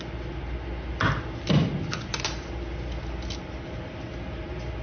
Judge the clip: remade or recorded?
recorded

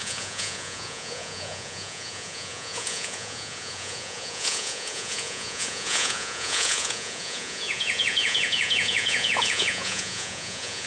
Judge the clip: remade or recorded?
remade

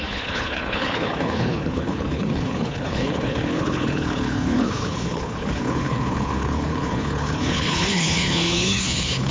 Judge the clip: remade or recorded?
remade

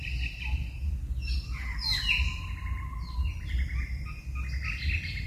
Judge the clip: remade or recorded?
recorded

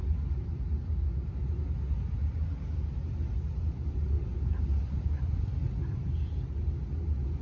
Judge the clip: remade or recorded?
recorded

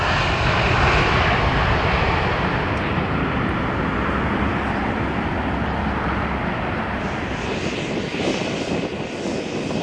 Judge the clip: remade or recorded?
recorded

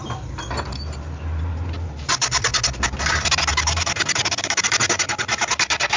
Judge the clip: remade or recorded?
recorded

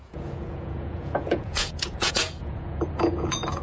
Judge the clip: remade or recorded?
remade